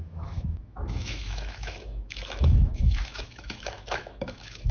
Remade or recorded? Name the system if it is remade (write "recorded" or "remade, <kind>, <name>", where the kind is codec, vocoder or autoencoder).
remade, autoencoder, DAC-VAE